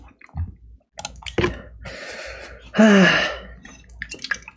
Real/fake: real